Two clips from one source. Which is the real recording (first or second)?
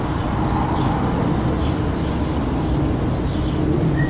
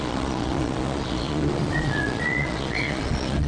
first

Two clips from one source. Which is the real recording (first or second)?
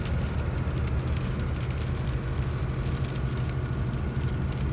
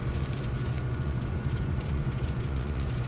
first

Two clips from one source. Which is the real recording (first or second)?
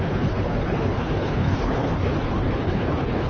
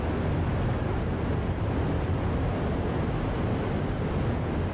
second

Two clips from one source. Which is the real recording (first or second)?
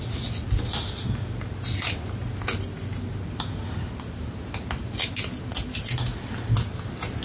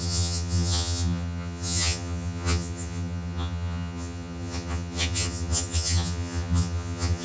first